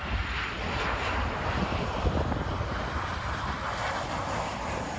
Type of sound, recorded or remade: remade